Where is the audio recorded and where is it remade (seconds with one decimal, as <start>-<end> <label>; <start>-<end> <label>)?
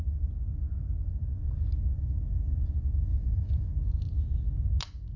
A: 0.0-3.1 recorded; 3.1-3.7 remade; 3.7-5.2 recorded